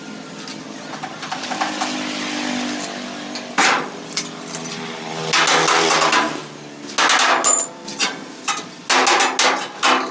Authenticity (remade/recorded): recorded